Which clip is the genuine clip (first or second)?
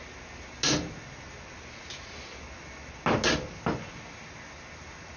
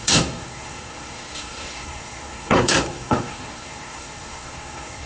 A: first